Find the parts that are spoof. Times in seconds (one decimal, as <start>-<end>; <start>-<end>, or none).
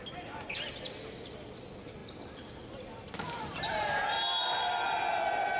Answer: none